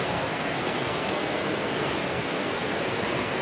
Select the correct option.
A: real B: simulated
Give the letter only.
B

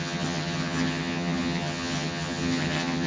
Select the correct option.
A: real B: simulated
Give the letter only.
B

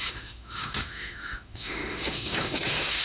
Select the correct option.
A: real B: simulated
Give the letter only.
B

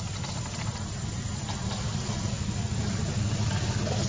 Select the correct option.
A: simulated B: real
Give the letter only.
B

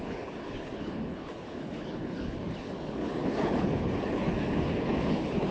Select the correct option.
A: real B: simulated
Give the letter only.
B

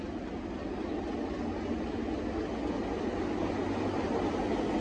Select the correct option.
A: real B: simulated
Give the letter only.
A